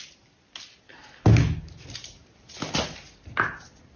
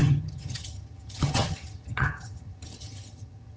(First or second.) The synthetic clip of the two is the second